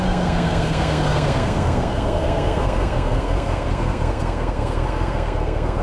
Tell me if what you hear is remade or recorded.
remade